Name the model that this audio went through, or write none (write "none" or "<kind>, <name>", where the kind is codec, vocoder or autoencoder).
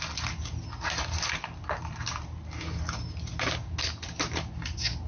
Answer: none